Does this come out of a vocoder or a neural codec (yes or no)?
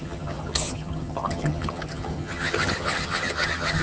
yes